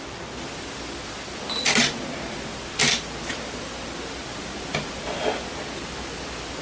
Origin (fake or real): real